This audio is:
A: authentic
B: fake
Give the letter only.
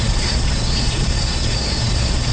B